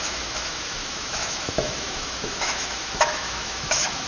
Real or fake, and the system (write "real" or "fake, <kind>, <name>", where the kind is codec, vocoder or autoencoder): fake, autoencoder, DAC-VAE